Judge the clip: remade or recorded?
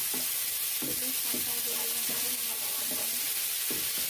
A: recorded